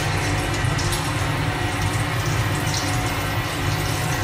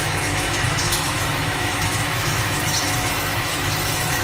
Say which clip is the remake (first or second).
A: second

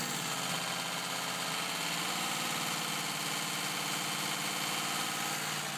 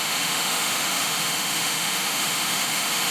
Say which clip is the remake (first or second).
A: second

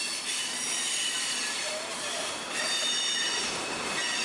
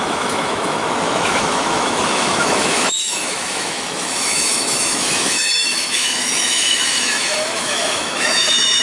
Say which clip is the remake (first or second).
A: second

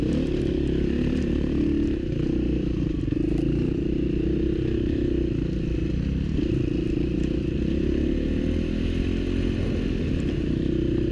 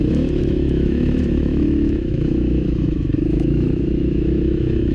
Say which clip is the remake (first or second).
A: second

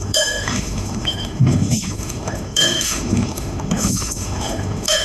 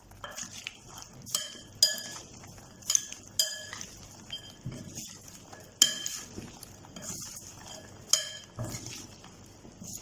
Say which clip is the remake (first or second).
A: first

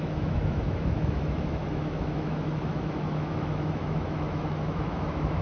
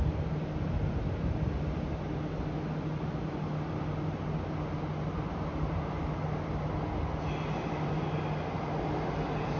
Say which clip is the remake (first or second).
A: first